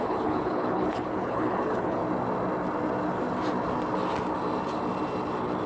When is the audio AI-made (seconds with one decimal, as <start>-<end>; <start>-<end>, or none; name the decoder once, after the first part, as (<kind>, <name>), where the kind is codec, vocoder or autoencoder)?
0.0-2.0 (codec, HILCodec)